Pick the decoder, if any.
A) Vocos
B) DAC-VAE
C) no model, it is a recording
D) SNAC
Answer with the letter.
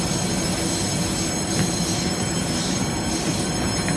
C